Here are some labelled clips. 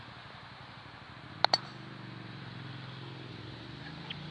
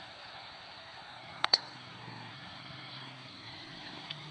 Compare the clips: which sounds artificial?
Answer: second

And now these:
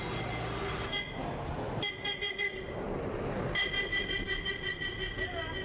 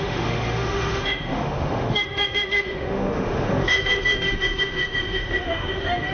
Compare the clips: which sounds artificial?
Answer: second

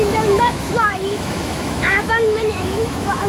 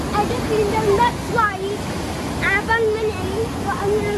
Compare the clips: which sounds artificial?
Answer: first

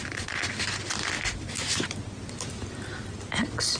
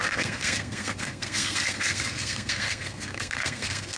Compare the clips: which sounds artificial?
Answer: second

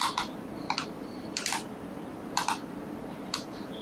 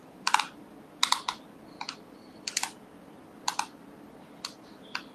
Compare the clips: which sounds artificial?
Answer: first